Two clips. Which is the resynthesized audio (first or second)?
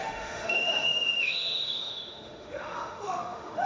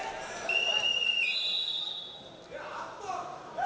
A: first